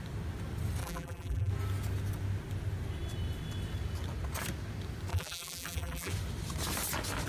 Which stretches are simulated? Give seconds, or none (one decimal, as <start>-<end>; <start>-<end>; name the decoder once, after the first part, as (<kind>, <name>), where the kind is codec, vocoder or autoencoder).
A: 0.8-1.5 (vocoder, BigVGAN v2); 5.1-6.1